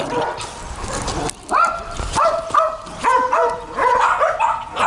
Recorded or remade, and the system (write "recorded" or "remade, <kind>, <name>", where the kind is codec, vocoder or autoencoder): recorded